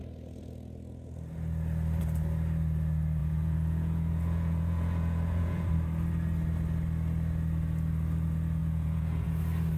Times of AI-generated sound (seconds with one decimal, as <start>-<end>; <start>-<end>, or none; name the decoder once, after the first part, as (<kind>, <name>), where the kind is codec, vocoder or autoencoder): 3.2-5.7 (vocoder, Vocos); 8.6-9.4